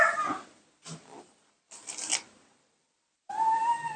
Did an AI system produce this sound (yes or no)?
no